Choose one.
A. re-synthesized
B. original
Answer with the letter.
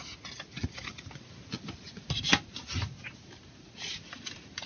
B